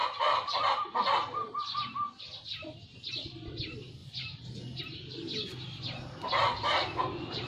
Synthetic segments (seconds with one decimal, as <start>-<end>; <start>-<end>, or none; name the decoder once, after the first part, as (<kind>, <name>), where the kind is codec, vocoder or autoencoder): 0.0-3.1 (vocoder, BigVGAN v2); 4.0-4.8